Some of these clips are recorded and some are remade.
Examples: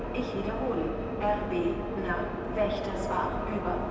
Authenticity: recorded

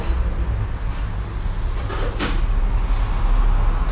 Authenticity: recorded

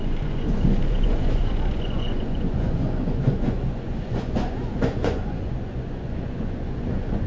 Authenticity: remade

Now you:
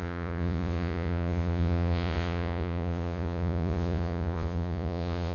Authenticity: remade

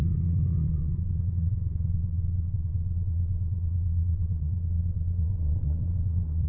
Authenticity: remade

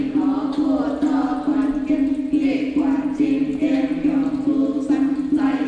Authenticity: recorded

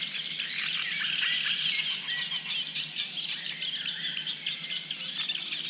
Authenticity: recorded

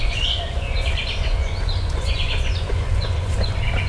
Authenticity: remade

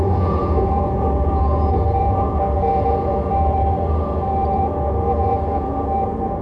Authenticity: remade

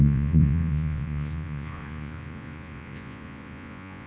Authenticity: remade